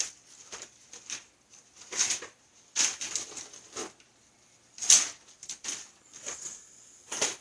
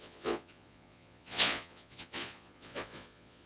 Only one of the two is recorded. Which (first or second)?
first